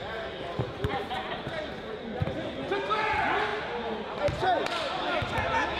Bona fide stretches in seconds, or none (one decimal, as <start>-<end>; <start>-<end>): 0.0-5.8